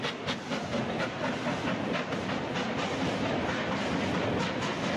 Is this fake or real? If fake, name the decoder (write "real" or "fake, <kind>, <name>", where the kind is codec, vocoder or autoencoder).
real